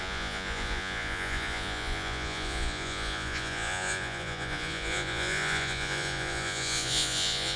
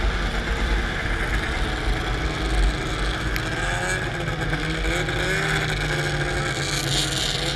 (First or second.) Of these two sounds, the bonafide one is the second